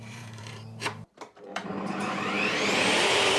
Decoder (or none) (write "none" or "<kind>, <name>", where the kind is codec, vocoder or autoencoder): vocoder, BigVGAN v2